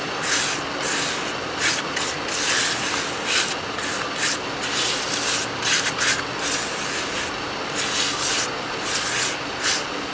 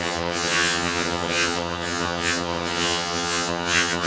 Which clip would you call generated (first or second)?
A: second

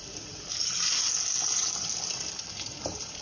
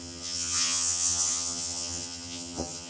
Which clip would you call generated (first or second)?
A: second